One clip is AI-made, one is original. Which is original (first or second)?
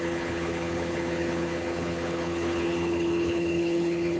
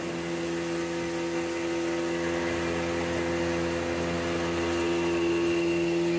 second